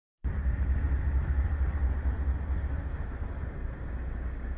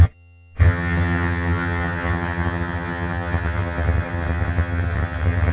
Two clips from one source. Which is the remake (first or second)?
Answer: second